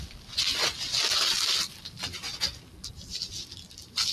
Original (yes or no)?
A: yes